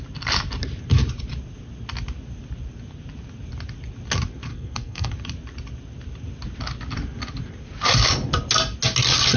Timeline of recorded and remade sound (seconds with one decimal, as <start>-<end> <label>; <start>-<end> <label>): 0.0-4.5 recorded; 4.5-5.1 remade; 5.1-9.4 recorded